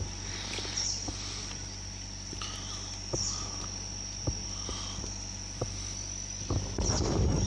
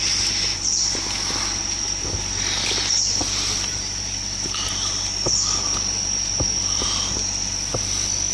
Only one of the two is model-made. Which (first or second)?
first